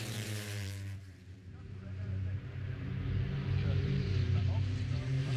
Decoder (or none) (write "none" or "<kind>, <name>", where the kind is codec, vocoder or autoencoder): vocoder, BigVGAN v2